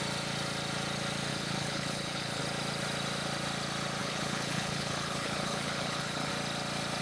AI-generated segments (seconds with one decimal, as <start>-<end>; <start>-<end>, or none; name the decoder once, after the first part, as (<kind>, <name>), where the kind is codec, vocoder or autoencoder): 1.3-2.4 (codec, HILCodec); 4.0-6.3